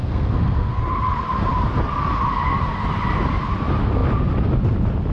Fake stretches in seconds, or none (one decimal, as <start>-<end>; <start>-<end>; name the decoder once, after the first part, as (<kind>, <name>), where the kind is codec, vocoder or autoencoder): 0.0-0.8 (codec, SNAC)